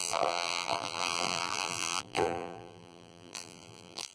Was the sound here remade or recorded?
remade